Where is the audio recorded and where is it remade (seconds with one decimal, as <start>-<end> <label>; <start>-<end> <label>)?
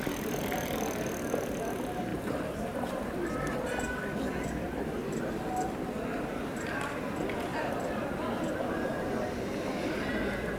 0.0-2.1 recorded; 2.1-3.3 remade; 3.3-10.6 recorded